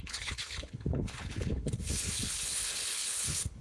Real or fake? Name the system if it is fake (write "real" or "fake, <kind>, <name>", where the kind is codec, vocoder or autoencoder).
fake, codec, HILCodec